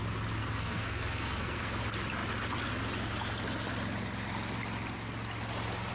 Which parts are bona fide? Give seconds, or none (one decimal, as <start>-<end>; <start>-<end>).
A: 0.0-0.4; 1.8-5.9